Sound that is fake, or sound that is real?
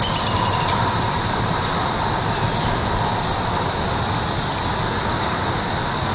real